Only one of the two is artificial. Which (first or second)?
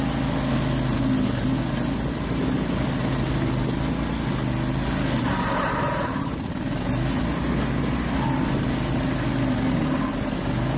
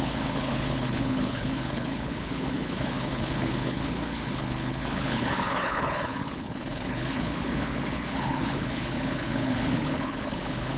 second